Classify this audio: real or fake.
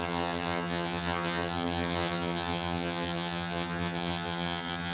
fake